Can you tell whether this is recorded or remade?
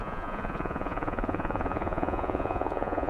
remade